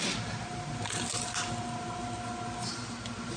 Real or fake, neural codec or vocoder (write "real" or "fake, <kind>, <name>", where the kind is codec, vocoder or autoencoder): real